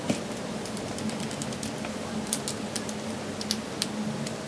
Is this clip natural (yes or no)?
yes